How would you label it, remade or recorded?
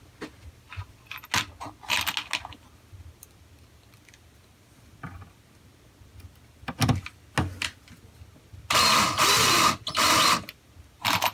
recorded